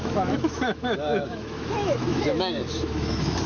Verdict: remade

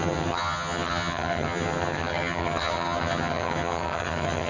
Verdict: remade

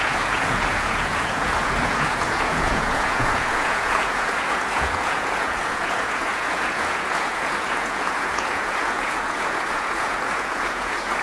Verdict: remade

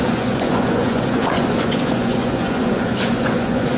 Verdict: remade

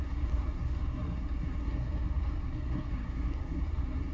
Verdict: remade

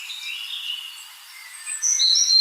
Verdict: recorded